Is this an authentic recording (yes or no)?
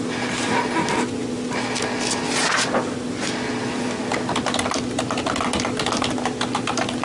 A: yes